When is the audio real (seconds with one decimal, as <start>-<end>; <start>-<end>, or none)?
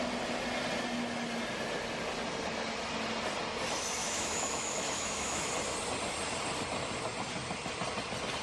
0.0-4.0; 5.5-8.4